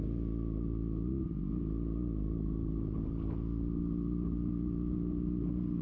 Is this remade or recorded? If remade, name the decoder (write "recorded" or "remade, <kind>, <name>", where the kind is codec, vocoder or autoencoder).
recorded